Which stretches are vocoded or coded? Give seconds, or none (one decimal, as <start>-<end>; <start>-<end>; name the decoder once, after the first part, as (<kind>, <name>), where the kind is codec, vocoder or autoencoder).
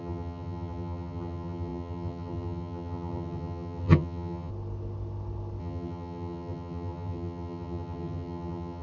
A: 0.0-4.5 (vocoder, HiFi-GAN); 5.6-8.8